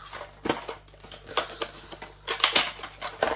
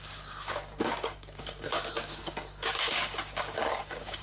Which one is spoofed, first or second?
second